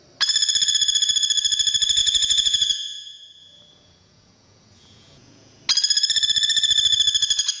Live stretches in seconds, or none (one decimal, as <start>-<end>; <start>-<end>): 0.0-2.0; 5.6-7.6